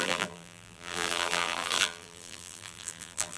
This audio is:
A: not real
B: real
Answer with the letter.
A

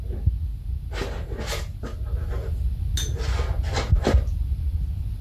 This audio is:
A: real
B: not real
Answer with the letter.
A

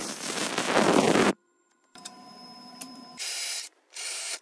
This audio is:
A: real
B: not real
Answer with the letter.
B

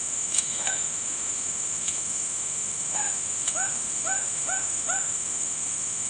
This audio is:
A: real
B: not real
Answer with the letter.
B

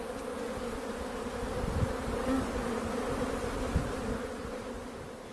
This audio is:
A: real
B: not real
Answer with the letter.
A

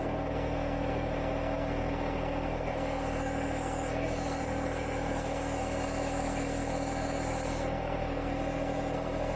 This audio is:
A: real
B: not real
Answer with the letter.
B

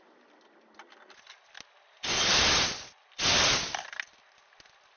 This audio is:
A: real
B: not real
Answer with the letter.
A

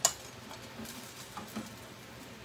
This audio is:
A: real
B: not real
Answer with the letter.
A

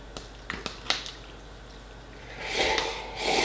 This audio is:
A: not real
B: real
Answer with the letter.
B